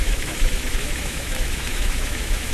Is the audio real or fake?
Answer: fake